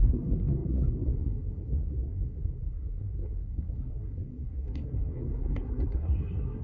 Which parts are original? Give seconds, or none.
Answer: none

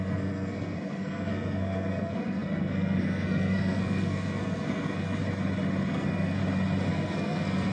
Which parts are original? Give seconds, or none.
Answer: 5.2-5.9; 6.4-6.9

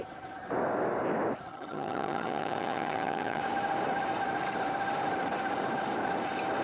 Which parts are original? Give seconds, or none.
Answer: 0.0-1.5; 3.4-6.6

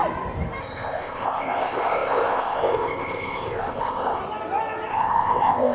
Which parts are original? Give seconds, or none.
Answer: 0.0-0.6; 4.2-4.9

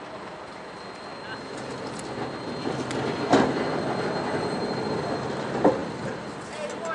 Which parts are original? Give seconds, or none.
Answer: 0.0-6.9

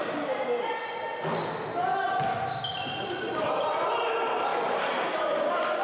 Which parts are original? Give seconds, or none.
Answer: 0.0-2.7; 3.7-4.5; 5.3-5.8

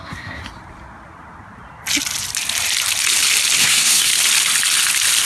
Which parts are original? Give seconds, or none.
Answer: 0.4-3.6; 4.1-5.3